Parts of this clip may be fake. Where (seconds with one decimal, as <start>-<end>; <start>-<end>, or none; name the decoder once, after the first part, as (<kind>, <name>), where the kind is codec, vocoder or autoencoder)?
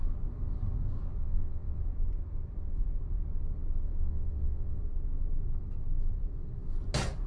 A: 1.2-1.8 (vocoder, WaveNeXt); 4.0-4.8